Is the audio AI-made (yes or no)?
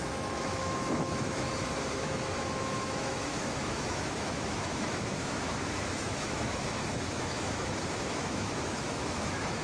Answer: yes